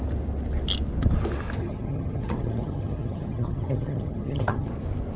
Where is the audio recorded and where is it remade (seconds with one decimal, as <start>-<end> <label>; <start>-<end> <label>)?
0.0-1.6 recorded; 1.6-4.7 remade; 4.7-5.2 recorded